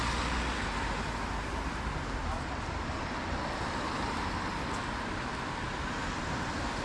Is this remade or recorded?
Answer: recorded